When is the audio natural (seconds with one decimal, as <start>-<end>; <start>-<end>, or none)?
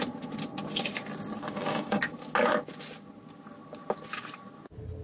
0.0-1.4; 2.0-5.0